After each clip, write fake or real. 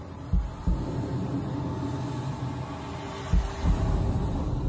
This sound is real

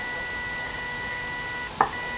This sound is real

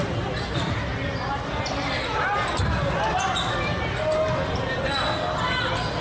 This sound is real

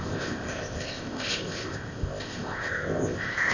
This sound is fake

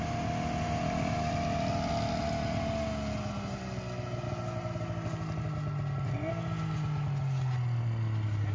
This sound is real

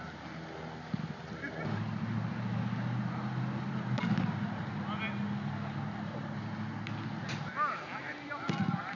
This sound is real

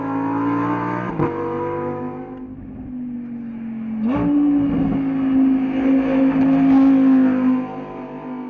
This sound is real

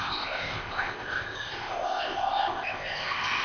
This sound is fake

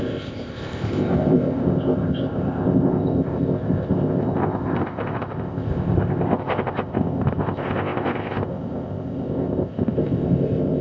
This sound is fake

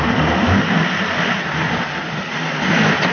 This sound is real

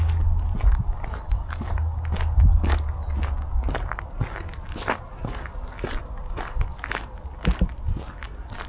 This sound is real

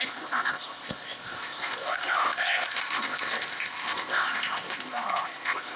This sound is fake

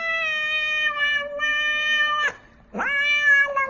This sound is real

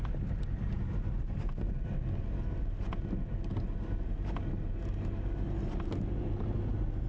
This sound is real